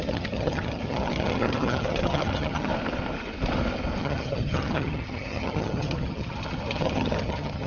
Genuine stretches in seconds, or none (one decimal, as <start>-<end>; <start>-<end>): 2.7-4.0